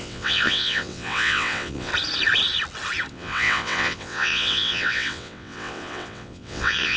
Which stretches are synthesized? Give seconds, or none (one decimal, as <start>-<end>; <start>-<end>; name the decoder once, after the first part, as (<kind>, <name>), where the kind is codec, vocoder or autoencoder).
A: 0.0-1.9 (vocoder, WaveNeXt); 3.1-7.0